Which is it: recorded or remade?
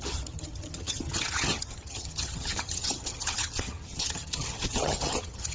remade